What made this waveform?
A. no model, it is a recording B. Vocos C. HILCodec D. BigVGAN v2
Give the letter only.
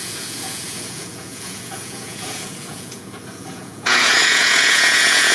B